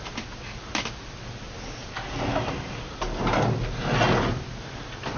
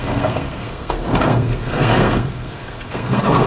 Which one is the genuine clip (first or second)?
first